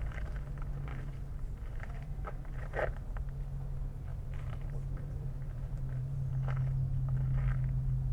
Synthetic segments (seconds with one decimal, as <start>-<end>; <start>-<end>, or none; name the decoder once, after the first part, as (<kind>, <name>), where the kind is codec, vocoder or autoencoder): 0.9-3.2 (vocoder, BigVGAN v2); 4.1-6.3